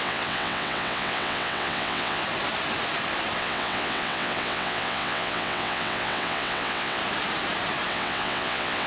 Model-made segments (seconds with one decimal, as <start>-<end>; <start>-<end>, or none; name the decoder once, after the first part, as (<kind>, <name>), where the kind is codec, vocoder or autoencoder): 0.0-2.2 (vocoder, WaveNeXt); 3.4-7.0; 7.9-8.9